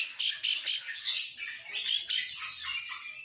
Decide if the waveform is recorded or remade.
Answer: recorded